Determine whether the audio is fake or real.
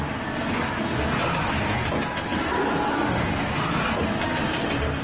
real